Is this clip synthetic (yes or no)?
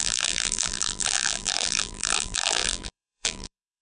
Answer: yes